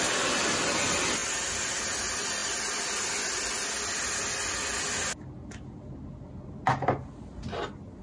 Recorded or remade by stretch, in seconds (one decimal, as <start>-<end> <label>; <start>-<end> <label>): 0.0-8.0 recorded